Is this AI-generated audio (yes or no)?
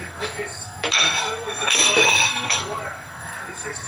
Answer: yes